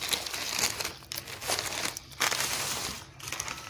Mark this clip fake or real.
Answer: real